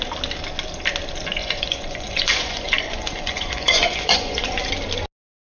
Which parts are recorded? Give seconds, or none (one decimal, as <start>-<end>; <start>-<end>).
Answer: 0.0-1.4; 4.7-5.5